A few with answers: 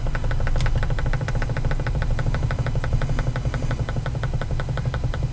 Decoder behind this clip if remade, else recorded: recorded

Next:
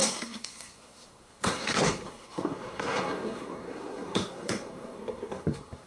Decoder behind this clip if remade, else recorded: remade, codec, SNAC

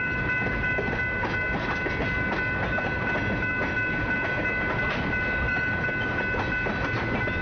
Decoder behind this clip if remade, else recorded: recorded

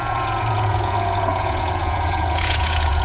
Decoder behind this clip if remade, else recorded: remade, vocoder, Vocos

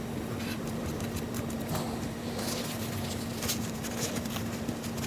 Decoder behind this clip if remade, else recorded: remade, vocoder, BigVGAN v2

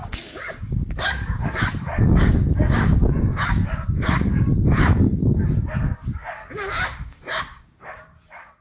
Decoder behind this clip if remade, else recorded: remade, codec, DAC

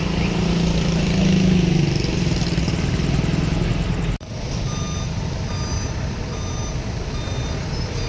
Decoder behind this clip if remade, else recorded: recorded